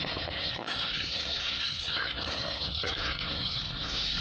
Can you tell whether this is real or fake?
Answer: fake